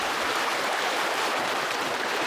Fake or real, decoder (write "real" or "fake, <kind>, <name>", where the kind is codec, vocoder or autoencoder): real